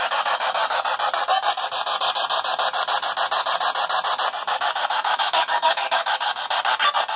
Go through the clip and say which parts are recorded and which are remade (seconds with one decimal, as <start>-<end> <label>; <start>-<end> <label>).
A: 0.0-0.6 remade; 0.6-4.5 recorded; 4.5-6.3 remade; 6.3-7.2 recorded